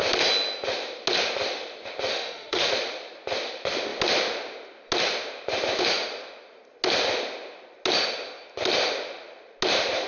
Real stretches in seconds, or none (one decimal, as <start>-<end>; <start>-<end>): 0.0-2.1; 2.7-10.1